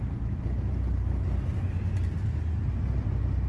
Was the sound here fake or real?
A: real